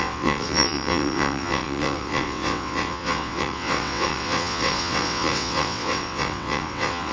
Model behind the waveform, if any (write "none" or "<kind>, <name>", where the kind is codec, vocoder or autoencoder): vocoder, WaveNeXt